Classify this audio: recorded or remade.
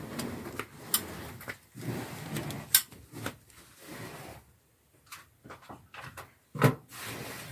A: recorded